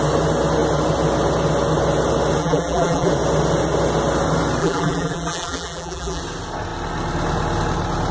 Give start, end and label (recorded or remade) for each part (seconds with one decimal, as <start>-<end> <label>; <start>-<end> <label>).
0.0-2.4 recorded; 2.4-3.1 remade; 3.1-4.6 recorded; 4.6-6.2 remade; 6.2-8.1 recorded